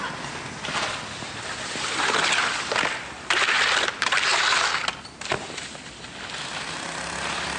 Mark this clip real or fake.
real